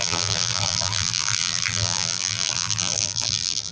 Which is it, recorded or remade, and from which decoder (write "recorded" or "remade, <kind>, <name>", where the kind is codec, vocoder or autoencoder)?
remade, vocoder, BigVGAN v2